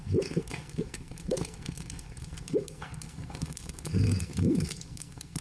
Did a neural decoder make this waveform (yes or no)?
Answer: yes